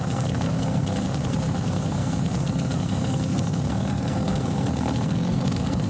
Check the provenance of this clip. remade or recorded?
remade